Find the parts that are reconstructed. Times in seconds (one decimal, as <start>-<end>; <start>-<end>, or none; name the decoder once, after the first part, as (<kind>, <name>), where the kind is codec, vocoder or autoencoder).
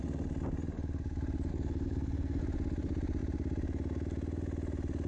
1.5-2.4 (codec, SNAC)